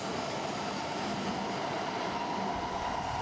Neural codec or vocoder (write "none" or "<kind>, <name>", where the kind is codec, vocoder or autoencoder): none